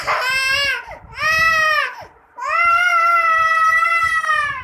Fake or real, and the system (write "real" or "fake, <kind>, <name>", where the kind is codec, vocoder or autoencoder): real